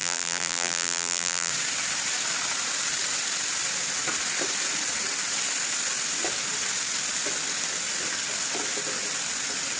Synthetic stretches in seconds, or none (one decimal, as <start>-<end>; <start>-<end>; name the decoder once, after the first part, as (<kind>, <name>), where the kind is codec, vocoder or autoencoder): 0.0-1.5 (vocoder, BigVGAN v2)